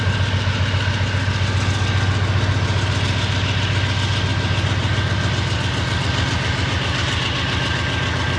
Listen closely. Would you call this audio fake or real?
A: real